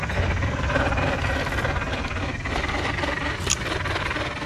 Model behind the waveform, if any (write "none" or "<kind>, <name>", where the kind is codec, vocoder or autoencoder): none